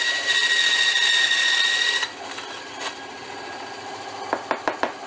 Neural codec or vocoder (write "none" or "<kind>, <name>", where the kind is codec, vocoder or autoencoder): none